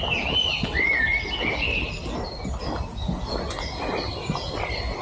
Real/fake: real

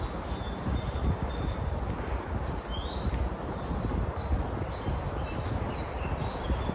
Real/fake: real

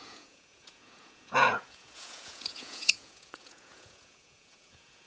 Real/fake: fake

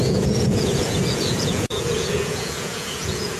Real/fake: fake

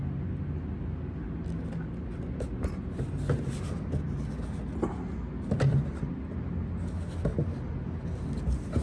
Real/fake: real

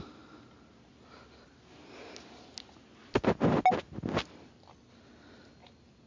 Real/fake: real